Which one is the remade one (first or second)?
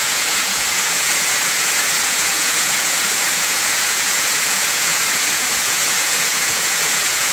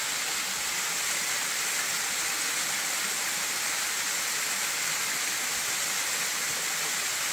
first